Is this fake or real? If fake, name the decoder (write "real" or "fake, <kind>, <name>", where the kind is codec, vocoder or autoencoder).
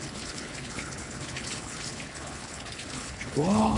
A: fake, codec, HILCodec